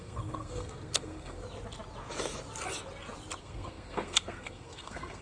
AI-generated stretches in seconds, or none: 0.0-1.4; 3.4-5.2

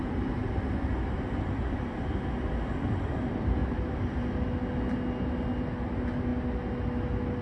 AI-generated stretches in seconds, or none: none

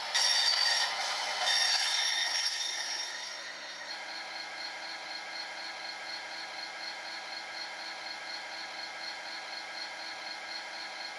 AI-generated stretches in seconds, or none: 1.7-3.9

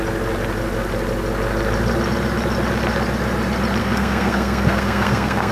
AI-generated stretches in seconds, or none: 3.8-5.5

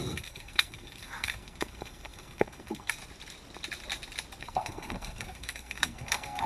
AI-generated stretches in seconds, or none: 0.0-3.0; 4.4-6.5

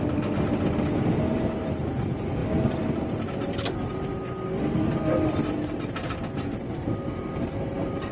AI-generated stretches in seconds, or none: none